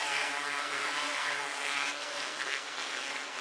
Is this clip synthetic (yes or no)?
yes